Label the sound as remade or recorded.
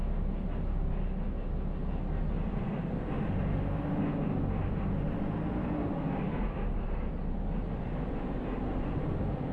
recorded